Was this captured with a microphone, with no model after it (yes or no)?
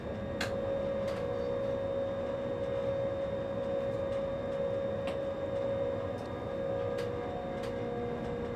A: yes